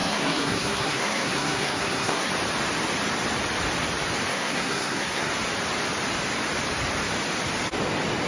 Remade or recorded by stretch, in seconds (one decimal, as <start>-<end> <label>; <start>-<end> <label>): 0.0-2.3 remade; 2.3-4.3 recorded; 4.3-5.3 remade; 5.3-8.3 recorded